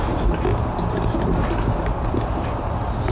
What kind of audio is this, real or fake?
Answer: real